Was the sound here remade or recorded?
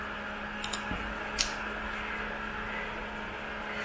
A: recorded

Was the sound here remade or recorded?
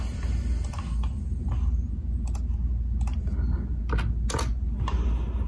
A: recorded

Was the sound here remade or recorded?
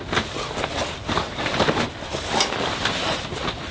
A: recorded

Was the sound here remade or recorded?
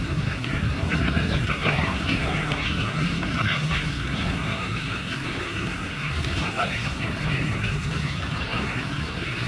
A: remade